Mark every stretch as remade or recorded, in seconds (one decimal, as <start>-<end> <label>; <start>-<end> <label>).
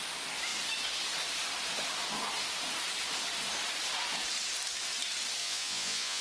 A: 0.0-5.4 recorded; 5.4-6.2 remade